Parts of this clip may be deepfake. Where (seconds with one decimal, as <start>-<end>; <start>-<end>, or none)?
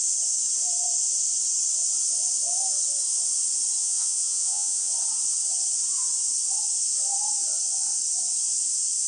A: 3.8-4.9